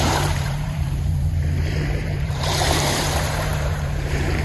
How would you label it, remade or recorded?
remade